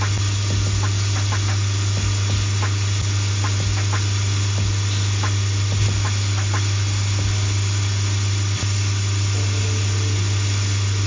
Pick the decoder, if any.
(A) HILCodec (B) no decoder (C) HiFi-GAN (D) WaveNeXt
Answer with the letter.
B